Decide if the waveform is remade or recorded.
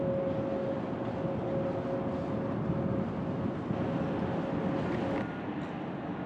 recorded